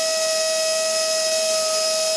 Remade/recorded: recorded